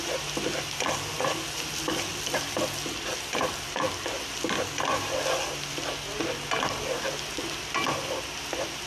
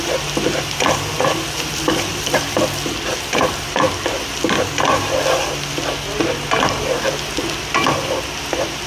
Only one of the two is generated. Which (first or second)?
second